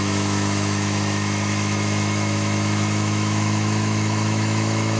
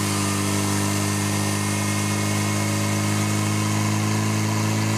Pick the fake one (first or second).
first